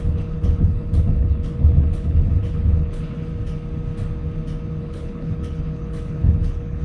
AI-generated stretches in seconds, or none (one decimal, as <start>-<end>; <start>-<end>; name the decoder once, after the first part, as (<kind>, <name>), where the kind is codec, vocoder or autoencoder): 0.0-3.3 (codec, HILCodec); 4.8-6.8